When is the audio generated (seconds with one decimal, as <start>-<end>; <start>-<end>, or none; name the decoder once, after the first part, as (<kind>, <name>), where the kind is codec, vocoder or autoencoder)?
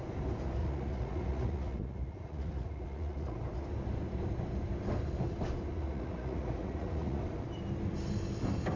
0.6-3.4 (vocoder, Vocos); 5.7-7.2